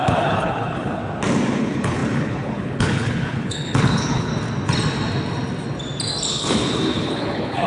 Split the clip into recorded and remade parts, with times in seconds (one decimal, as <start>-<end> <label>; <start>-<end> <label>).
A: 0.0-1.0 remade; 1.0-1.6 recorded; 1.6-4.3 remade; 4.3-6.3 recorded; 6.3-7.7 remade

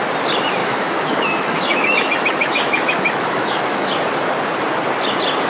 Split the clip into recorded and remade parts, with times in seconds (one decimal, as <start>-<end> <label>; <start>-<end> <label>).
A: 0.0-0.6 recorded; 0.6-3.9 remade; 3.9-5.5 recorded

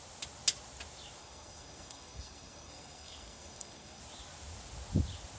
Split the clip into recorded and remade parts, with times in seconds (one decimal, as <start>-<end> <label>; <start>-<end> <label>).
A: 0.0-1.2 recorded; 1.2-4.0 remade; 4.0-5.4 recorded

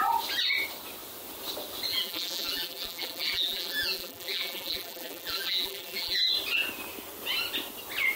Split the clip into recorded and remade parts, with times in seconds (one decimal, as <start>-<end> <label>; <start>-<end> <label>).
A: 0.0-1.9 recorded; 1.9-6.3 remade; 6.3-8.2 recorded

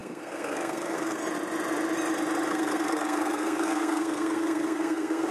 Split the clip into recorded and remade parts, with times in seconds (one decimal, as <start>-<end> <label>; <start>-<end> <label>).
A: 0.0-1.2 remade; 1.2-2.5 recorded; 2.5-5.3 remade